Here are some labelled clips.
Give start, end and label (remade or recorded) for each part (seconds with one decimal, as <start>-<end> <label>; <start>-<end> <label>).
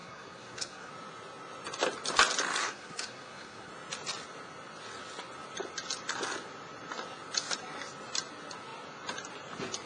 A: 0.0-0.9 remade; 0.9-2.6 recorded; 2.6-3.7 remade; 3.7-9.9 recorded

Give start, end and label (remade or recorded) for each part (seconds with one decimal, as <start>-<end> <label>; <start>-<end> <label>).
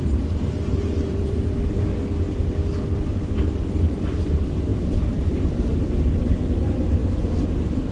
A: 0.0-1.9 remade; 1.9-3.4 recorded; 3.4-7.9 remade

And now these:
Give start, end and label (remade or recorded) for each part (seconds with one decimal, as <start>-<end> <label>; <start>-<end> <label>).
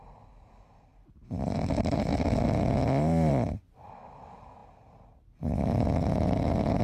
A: 0.0-6.8 recorded